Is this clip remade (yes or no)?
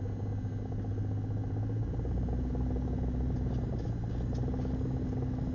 no